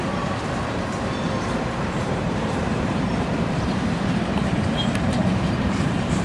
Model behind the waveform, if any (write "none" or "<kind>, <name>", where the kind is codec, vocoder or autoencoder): vocoder, BigVGAN v2